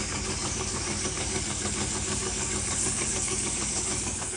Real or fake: fake